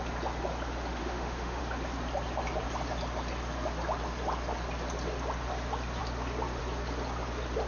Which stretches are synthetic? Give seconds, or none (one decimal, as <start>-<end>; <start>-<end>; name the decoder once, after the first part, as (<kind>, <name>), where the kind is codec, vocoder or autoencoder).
1.0-1.6 (autoencoder, DAC-VAE)